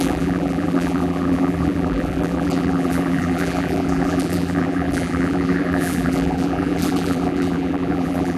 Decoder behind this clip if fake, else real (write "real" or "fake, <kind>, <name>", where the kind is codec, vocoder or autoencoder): fake, vocoder, BigVGAN v2